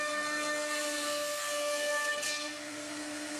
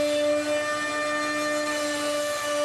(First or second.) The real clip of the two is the second